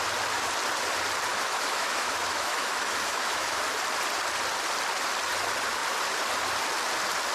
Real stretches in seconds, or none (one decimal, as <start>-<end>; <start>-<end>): 0.0-1.3; 3.6-7.3

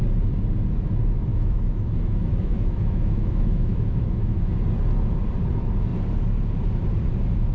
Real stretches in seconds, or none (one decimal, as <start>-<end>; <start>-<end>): 0.0-1.3; 4.4-7.5

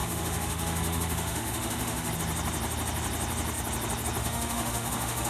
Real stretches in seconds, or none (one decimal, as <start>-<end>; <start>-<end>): 2.1-4.2

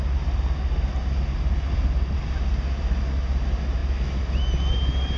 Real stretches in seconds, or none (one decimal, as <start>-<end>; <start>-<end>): 0.0-5.2

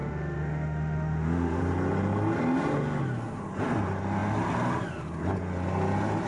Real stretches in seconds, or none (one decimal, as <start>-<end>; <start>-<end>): 1.6-6.3

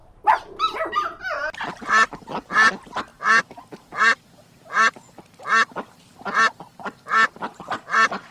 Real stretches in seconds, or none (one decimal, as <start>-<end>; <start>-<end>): 0.0-8.3

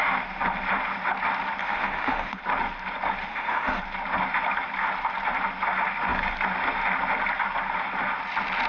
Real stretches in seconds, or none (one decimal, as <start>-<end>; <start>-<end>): 0.0-1.6; 2.4-3.2; 3.8-8.7

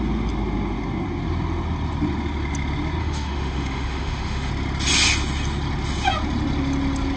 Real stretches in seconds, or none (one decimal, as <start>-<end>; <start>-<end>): 0.0-3.0; 4.5-7.2